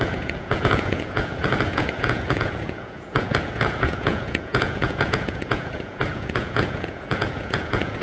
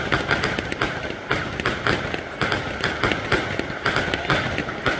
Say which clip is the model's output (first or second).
first